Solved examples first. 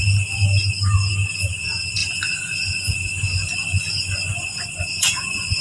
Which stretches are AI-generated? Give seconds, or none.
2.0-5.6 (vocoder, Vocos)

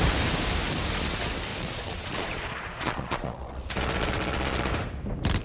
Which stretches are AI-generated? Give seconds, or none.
1.5-4.7 (vocoder, Vocos)

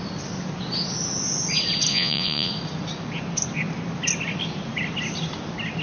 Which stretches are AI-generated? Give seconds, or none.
1.9-2.5 (vocoder, Vocos)

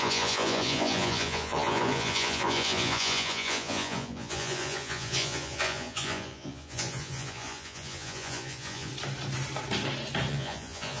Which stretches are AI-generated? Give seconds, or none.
0.0-8.9 (vocoder, Vocos); 10.3-11.0

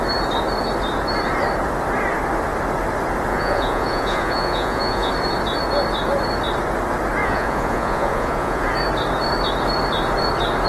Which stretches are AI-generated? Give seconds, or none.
3.3-5.1 (vocoder, Vocos); 7.2-8.7